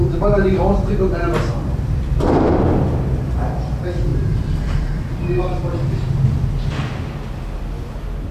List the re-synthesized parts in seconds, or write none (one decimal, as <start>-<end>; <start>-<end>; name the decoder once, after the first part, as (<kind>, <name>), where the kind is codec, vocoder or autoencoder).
4.1-5.9 (vocoder, BigVGAN v2)